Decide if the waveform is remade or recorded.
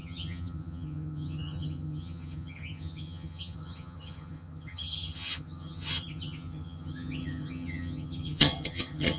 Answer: remade